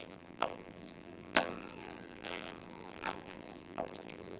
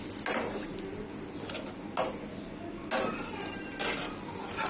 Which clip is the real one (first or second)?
second